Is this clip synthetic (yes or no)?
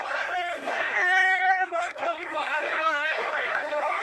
yes